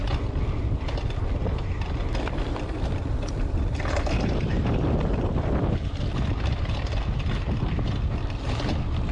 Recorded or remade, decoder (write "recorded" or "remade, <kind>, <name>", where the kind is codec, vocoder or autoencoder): recorded